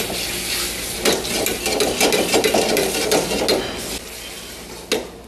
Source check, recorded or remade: recorded